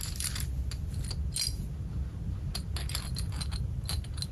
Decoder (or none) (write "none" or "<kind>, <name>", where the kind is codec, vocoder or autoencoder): none